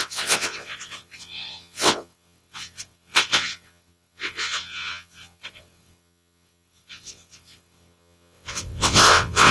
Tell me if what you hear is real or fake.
fake